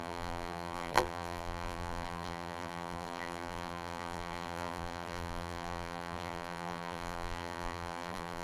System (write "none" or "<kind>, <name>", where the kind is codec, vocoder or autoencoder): vocoder, BigVGAN v2